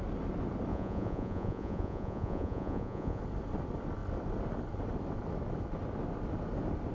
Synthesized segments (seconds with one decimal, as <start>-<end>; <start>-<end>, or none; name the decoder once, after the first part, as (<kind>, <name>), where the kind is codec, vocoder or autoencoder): 0.7-3.2 (vocoder, Vocos)